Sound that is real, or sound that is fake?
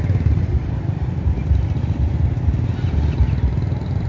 real